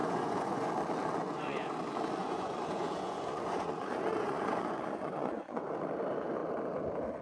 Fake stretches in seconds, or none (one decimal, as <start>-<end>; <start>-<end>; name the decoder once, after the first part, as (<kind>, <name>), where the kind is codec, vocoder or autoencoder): 0.0-0.7 (vocoder, Vocos); 1.2-1.8; 2.2-5.7